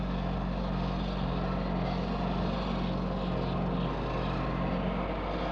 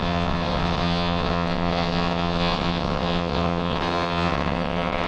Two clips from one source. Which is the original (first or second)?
first